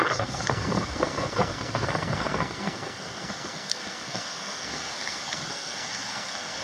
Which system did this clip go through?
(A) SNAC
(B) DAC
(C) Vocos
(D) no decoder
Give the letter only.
A